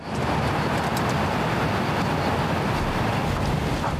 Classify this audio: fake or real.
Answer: real